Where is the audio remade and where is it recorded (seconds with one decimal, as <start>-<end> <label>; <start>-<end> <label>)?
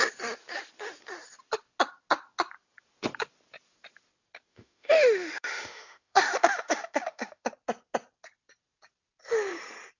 0.0-4.5 recorded; 4.5-7.5 remade; 7.5-10.0 recorded